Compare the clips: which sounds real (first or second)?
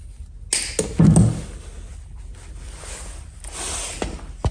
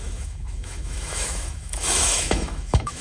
first